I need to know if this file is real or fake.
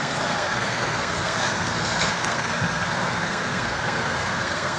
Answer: fake